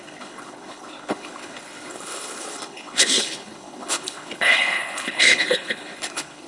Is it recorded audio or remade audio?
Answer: remade